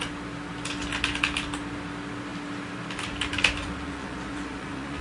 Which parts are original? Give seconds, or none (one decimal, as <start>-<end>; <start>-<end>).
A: 0.0-3.6